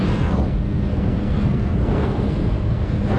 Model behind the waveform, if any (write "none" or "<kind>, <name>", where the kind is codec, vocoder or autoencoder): codec, SNAC